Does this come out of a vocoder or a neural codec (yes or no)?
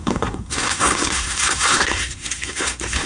yes